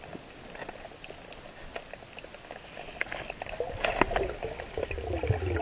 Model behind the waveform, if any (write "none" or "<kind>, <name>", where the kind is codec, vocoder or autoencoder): none